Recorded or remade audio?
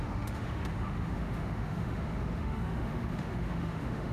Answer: remade